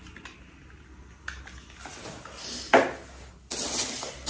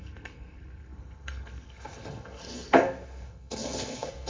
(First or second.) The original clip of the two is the first